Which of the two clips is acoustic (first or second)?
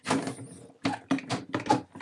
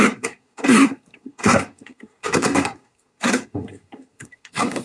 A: first